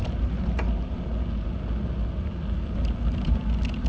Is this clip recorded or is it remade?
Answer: recorded